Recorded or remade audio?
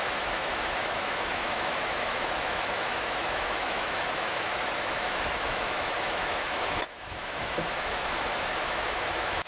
remade